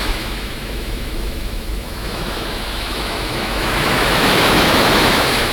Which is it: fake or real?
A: fake